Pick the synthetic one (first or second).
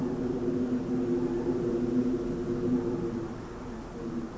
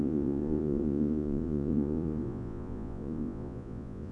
second